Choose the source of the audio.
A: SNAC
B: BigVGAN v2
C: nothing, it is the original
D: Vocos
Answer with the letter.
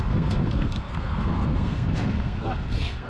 A